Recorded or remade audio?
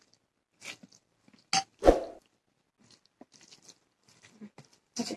recorded